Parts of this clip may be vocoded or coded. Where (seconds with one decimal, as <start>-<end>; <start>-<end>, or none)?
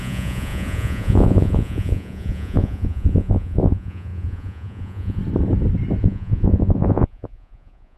0.0-5.2; 6.0-8.0